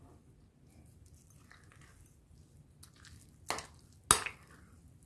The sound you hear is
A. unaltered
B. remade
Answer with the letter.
A